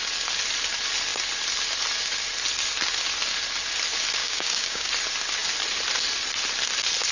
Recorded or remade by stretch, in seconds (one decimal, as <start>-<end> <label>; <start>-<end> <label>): 0.0-4.2 recorded; 4.2-4.9 remade; 4.9-7.1 recorded